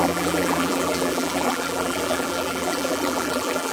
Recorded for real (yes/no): no